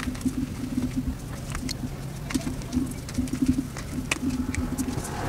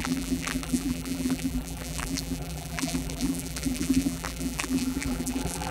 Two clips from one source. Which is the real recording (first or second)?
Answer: first